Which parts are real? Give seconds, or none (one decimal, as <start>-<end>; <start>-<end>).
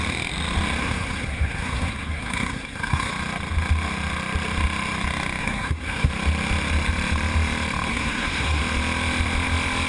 0.0-0.8; 3.1-5.4; 6.1-7.9; 8.6-9.9